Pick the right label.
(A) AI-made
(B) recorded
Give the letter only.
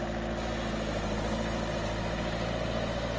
B